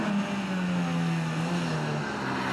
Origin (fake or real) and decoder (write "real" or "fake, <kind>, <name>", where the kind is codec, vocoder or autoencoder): real